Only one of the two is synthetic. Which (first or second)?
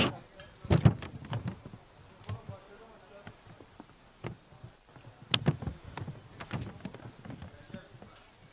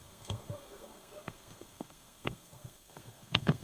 second